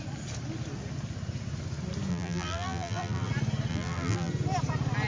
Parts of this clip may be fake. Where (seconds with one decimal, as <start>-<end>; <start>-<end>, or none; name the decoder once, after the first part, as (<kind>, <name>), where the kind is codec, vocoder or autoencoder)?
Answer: 2.1-3.3 (vocoder, BigVGAN v2); 3.7-4.3